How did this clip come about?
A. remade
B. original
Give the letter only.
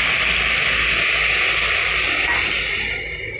B